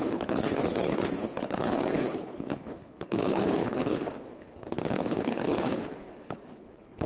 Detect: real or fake fake